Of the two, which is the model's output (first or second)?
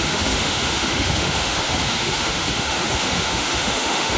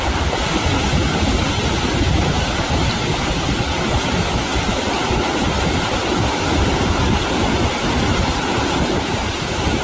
first